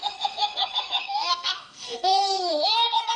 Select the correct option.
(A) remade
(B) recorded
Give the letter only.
A